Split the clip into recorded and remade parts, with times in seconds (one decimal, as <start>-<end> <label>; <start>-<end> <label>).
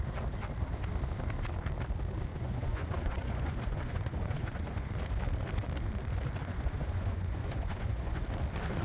0.0-2.3 recorded; 2.3-4.9 remade; 4.9-6.4 recorded; 6.4-8.2 remade; 8.2-8.8 recorded